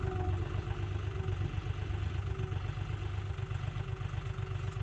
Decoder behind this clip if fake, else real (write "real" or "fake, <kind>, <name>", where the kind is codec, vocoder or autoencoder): real